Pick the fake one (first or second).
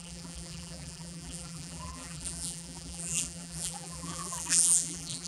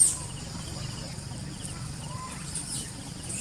first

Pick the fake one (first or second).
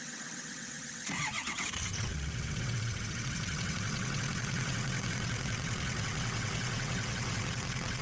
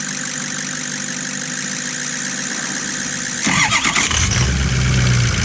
first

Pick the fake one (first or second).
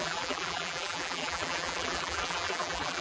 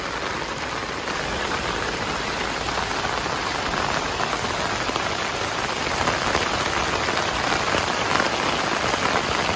first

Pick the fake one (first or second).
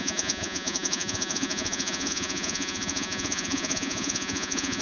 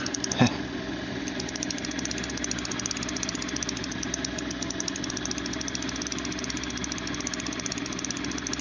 first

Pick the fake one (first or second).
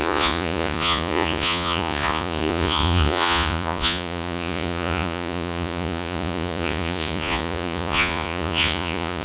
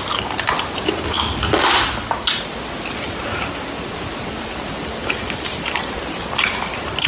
first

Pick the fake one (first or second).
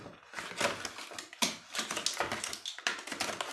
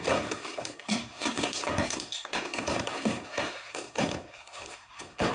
second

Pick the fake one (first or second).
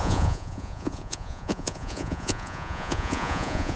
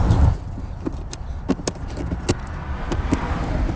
first